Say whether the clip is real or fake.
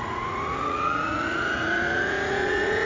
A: fake